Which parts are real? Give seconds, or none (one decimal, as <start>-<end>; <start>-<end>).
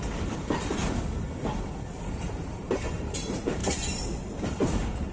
0.8-2.2